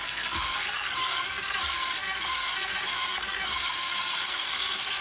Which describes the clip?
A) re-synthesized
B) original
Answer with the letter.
A